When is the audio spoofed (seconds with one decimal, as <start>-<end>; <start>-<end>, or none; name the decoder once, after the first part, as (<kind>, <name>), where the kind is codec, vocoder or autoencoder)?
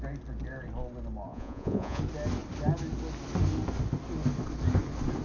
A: 1.3-2.0 (vocoder, Vocos)